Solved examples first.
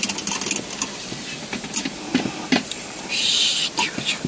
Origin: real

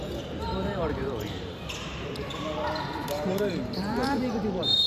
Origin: fake